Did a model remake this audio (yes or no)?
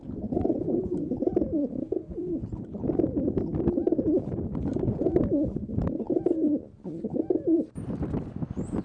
yes